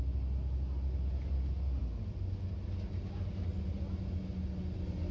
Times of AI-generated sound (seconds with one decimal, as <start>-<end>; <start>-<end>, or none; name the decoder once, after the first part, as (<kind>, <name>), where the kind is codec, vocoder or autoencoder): none